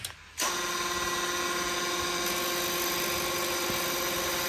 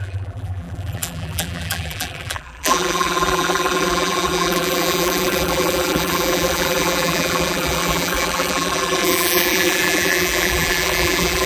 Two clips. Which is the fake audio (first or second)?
second